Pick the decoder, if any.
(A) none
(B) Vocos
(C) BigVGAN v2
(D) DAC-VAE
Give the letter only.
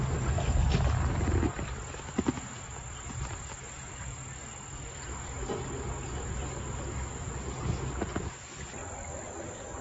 A